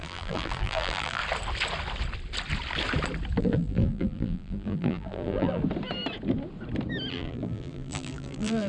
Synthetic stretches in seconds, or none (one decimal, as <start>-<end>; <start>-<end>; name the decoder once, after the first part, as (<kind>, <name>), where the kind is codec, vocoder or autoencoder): 0.0-1.2 (vocoder, BigVGAN v2); 3.4-5.6; 7.1-8.7